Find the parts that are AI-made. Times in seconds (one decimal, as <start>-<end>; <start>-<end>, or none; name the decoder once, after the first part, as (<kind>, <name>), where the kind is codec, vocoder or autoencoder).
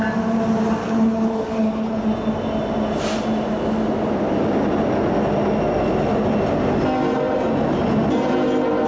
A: 0.8-2.0 (codec, HILCodec)